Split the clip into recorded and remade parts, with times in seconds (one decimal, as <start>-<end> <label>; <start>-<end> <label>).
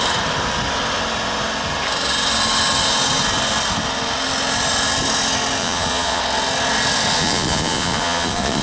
0.0-5.6 recorded; 5.6-6.2 remade; 6.2-7.1 recorded; 7.1-8.6 remade